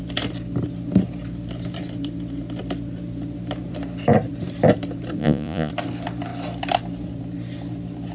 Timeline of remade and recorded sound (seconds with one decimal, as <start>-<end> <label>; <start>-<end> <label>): 0.0-5.2 recorded; 5.2-5.7 remade; 5.7-8.1 recorded